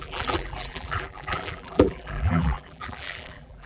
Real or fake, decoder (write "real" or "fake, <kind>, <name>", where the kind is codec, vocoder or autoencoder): fake, vocoder, BigVGAN v2